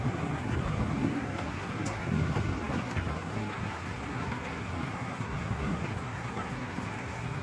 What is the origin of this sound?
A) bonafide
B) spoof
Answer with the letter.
B